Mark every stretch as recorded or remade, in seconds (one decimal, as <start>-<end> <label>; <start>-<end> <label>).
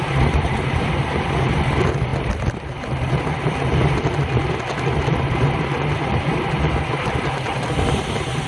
0.0-2.1 remade; 2.1-5.1 recorded; 5.1-8.5 remade